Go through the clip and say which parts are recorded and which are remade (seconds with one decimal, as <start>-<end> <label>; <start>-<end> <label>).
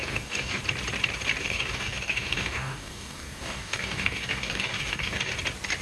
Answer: 0.0-0.6 remade; 0.6-1.4 recorded; 1.4-5.3 remade; 5.3-5.8 recorded